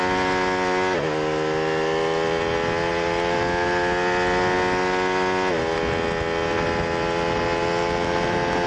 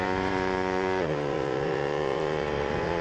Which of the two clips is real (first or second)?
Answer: first